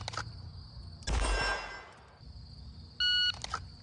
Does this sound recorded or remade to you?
recorded